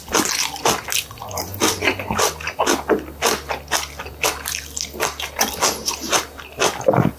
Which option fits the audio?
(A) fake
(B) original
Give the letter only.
B